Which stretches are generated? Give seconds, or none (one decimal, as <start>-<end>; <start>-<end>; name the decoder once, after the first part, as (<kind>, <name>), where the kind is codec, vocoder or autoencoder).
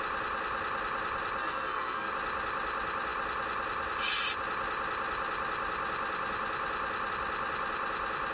1.4-2.1 (codec, SNAC)